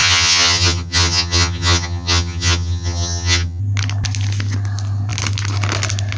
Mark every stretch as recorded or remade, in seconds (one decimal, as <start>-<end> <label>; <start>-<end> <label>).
0.0-3.6 remade; 3.6-6.2 recorded